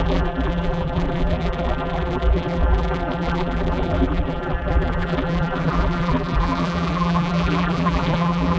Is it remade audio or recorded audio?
remade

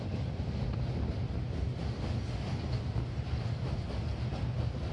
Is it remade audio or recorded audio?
recorded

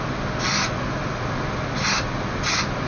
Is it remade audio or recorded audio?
recorded